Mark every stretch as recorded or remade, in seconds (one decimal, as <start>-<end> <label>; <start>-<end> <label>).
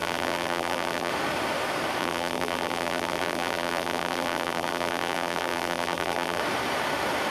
0.0-1.1 remade; 1.1-2.0 recorded; 2.0-6.4 remade; 6.4-7.3 recorded